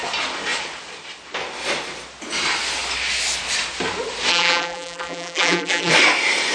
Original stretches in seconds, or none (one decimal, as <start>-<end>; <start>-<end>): 0.0-4.3; 5.9-6.5